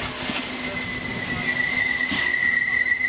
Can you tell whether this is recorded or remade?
recorded